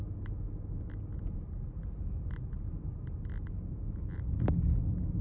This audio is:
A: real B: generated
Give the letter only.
A